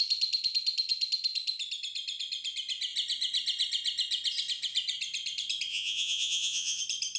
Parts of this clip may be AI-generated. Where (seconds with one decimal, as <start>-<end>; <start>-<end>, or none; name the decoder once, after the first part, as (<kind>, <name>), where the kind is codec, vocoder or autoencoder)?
5.7-6.8 (vocoder, Vocos)